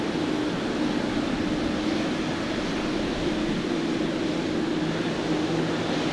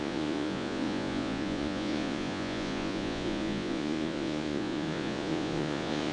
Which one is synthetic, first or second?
second